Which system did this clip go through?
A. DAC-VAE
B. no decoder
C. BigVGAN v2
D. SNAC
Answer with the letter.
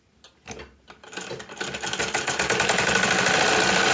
B